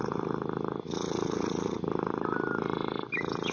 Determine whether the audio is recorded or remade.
recorded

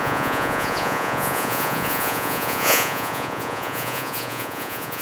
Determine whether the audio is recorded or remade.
remade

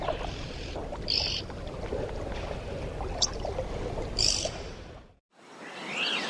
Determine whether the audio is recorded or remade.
recorded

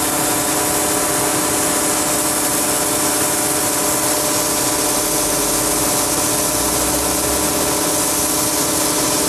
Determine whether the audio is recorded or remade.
recorded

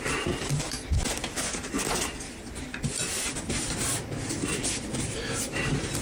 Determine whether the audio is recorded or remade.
recorded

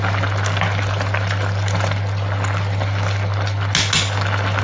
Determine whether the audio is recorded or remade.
recorded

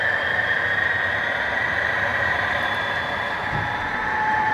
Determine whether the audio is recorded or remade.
remade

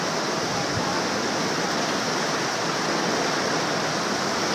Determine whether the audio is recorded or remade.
recorded